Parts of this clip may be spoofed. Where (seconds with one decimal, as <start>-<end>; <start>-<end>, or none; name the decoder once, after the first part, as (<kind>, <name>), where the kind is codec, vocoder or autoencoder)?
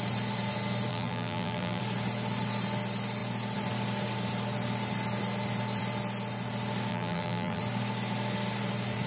0.9-1.8 (vocoder, BigVGAN v2); 6.9-7.6